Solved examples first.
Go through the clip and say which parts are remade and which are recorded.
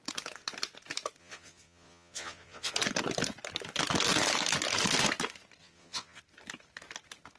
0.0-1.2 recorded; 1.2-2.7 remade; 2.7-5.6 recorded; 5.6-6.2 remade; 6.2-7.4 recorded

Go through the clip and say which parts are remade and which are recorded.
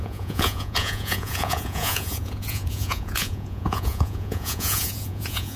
0.0-5.6 remade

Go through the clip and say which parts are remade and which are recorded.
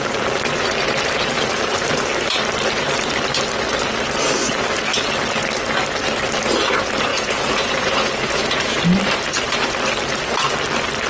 0.0-7.1 recorded; 7.1-8.8 remade; 8.8-11.1 recorded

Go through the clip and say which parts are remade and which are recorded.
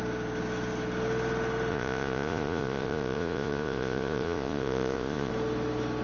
0.0-1.7 recorded; 1.7-5.3 remade; 5.3-6.0 recorded